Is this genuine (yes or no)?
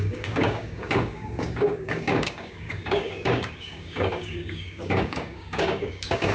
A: no